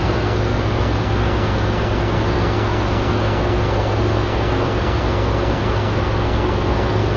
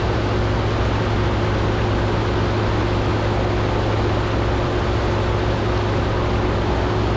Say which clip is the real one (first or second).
second